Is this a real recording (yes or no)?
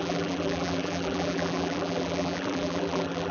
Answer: no